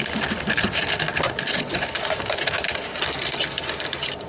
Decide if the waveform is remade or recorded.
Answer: recorded